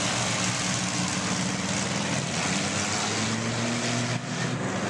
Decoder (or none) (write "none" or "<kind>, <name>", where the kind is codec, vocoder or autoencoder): none